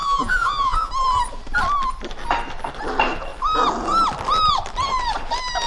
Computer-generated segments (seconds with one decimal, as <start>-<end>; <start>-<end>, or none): 0.0-0.9